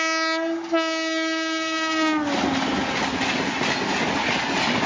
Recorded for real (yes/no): yes